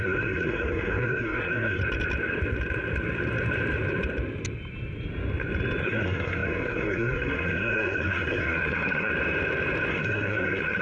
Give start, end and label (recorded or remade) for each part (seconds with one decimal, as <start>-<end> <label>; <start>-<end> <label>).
0.0-1.8 remade; 1.8-5.8 recorded; 5.8-9.1 remade; 9.1-9.9 recorded; 9.9-10.8 remade